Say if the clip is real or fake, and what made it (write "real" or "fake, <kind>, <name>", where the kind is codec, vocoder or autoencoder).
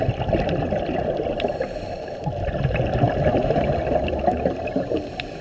real